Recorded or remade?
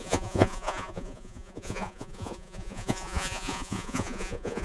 remade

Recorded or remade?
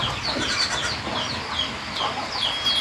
recorded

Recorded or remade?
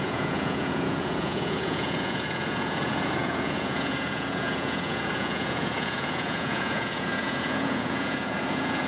remade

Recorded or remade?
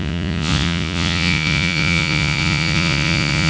remade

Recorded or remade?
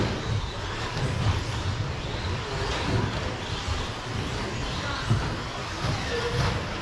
recorded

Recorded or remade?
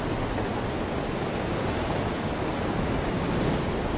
recorded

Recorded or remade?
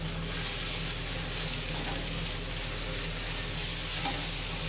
recorded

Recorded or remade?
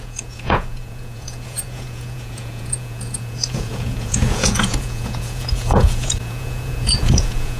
remade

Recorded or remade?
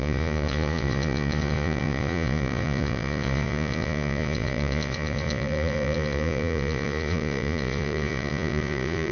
remade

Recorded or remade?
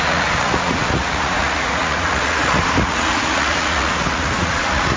remade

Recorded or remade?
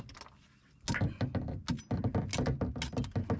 recorded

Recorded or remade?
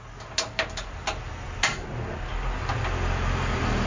recorded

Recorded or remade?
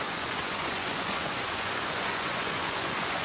remade